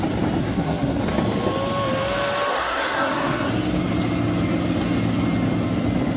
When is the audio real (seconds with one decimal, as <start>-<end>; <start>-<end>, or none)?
0.0-0.4; 1.0-2.5; 3.5-6.2